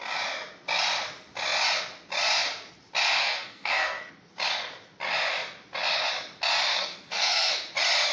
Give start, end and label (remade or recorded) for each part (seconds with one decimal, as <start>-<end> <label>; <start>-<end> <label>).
0.0-3.2 recorded; 3.2-4.1 remade; 4.1-6.7 recorded; 6.7-7.5 remade; 7.5-8.1 recorded